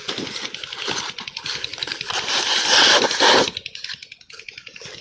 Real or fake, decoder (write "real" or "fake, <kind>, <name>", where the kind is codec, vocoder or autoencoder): real